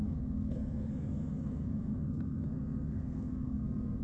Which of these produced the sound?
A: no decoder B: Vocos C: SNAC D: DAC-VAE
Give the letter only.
C